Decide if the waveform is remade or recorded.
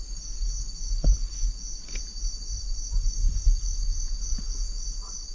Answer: recorded